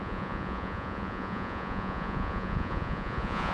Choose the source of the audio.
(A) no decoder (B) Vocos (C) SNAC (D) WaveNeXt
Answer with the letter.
B